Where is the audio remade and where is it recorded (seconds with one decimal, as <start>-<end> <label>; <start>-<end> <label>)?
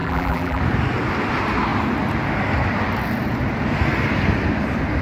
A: 0.0-0.6 remade; 0.6-5.0 recorded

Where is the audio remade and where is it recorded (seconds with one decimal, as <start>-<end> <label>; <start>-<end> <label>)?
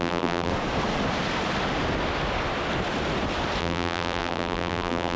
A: 0.0-0.5 remade; 0.5-3.6 recorded; 3.6-5.2 remade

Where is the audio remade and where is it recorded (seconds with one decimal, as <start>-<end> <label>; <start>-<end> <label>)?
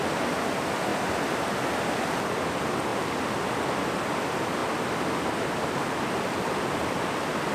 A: 0.0-7.5 recorded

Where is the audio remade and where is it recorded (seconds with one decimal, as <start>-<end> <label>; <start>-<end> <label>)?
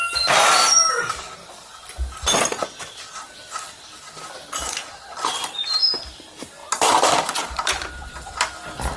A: 0.0-1.9 remade; 1.9-5.4 recorded; 5.4-6.0 remade; 6.0-6.6 recorded; 6.6-7.7 remade; 7.7-9.0 recorded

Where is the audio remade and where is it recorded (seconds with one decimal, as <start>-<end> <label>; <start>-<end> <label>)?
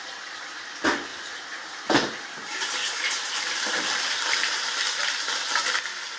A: 0.0-1.1 recorded; 1.1-4.8 remade; 4.8-6.2 recorded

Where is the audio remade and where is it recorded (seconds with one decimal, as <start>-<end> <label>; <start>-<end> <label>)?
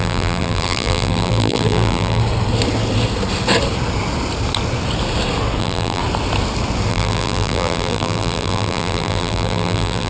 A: 0.0-2.2 remade; 2.2-5.6 recorded; 5.6-6.0 remade; 6.0-6.9 recorded; 6.9-10.1 remade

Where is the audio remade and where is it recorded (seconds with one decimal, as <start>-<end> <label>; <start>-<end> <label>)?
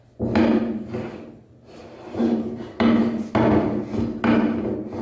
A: 0.0-1.8 recorded; 1.8-2.7 remade; 2.7-5.0 recorded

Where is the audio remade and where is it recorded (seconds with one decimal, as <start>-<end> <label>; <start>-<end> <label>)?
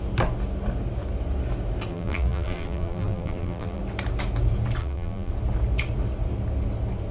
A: 0.0-1.9 recorded; 1.9-3.8 remade; 3.8-4.8 recorded; 4.8-5.3 remade; 5.3-7.1 recorded